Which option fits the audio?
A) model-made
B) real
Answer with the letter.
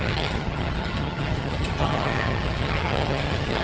A